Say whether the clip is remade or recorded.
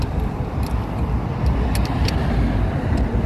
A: recorded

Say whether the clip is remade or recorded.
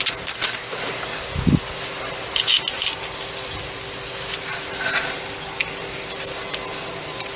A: recorded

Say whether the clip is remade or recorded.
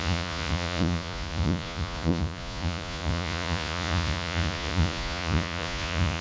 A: remade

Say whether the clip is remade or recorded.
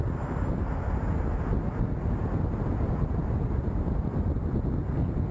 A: recorded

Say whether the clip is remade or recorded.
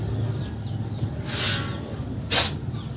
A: recorded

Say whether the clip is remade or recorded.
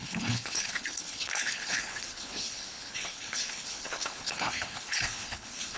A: remade